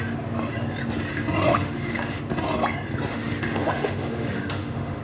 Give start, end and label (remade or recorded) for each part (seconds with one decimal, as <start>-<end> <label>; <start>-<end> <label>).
0.0-1.5 recorded; 1.5-2.2 remade; 2.2-3.1 recorded; 3.1-5.0 remade